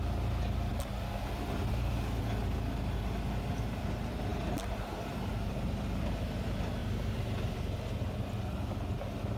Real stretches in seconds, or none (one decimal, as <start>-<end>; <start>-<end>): 0.0-6.8; 8.0-9.4